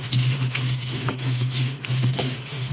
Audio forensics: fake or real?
fake